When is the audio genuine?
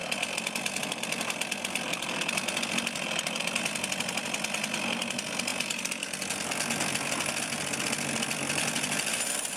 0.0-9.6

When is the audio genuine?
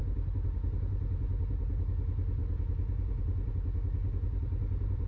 0.0-5.1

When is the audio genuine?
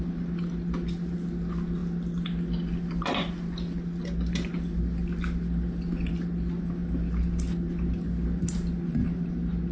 0.0-9.7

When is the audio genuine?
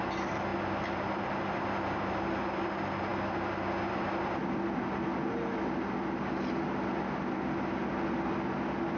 0.0-9.0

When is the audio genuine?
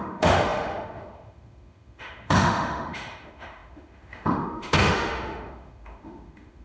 none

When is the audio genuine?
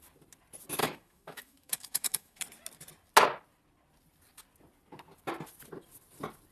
0.0-0.8; 2.4-6.5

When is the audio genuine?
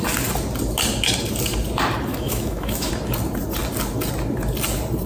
0.0-2.1; 2.9-5.1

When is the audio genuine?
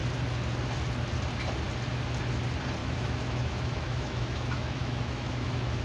0.0-2.8